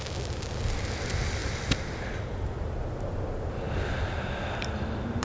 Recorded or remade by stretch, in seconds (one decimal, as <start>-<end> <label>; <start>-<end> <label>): 0.0-5.2 recorded